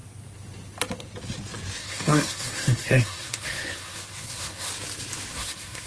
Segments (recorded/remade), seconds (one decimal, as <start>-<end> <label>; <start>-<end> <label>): 0.0-1.8 recorded; 1.8-4.7 remade; 4.7-5.3 recorded; 5.3-5.9 remade